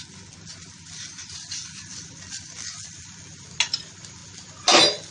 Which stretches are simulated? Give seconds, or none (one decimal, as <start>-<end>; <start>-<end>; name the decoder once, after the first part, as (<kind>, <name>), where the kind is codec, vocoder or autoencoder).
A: none